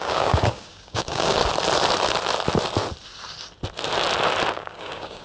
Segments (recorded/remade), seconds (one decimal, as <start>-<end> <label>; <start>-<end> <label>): 0.0-1.4 remade; 1.4-4.5 recorded; 4.5-5.2 remade